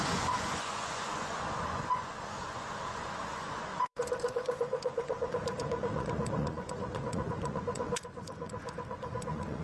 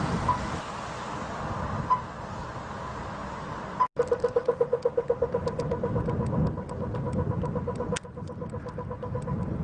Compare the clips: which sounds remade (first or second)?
first